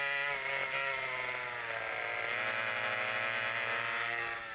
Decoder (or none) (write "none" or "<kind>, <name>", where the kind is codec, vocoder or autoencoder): none